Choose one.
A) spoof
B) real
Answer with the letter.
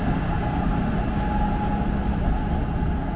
B